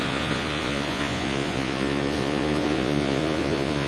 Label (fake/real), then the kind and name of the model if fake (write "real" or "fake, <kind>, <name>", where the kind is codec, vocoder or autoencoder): fake, vocoder, Vocos